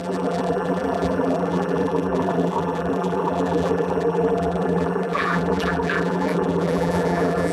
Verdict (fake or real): fake